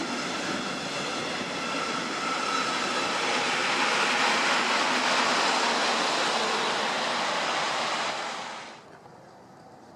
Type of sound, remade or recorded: recorded